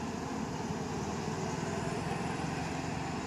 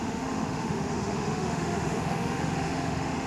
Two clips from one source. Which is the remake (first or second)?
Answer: second